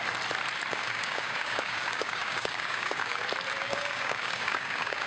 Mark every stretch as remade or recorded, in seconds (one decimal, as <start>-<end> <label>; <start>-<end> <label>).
0.0-0.7 recorded; 0.7-3.2 remade; 3.2-3.6 recorded; 3.6-5.1 remade